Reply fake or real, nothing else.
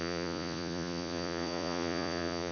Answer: fake